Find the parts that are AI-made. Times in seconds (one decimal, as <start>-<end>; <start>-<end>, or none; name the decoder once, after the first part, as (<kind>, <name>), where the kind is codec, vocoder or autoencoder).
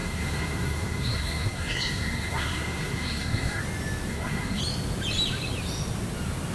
0.0-3.6 (codec, SNAC); 4.1-4.6